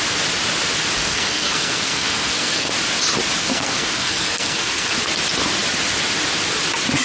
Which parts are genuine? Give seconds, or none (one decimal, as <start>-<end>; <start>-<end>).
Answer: 0.0-1.0; 2.7-3.4; 4.9-7.0

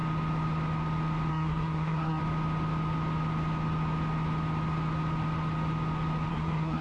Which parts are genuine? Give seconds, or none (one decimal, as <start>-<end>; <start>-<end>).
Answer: 0.0-1.3; 2.2-6.3

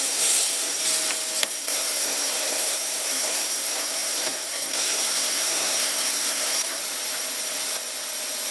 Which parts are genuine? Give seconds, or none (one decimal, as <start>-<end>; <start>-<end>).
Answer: 0.8-1.4; 6.8-8.5

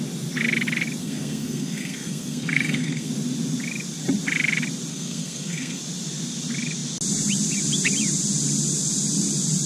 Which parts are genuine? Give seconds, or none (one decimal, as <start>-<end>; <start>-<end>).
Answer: 0.0-1.0; 3.1-4.9; 5.8-9.7

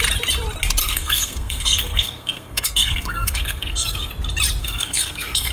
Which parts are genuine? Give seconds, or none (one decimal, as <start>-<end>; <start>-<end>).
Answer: 0.0-0.8; 4.1-4.6